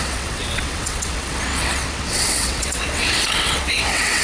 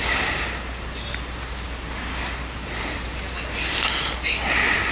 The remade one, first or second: first